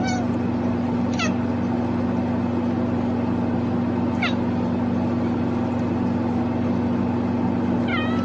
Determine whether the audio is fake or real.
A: real